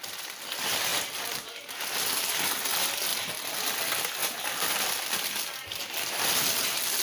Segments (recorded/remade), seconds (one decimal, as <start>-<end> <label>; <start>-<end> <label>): 0.0-3.1 recorded; 3.1-3.6 remade; 3.6-4.2 recorded; 4.2-6.5 remade; 6.5-7.0 recorded